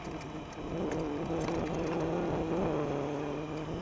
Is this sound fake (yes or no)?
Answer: no